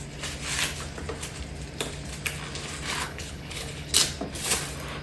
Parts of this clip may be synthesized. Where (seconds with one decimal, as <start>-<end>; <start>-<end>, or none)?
3.0-3.9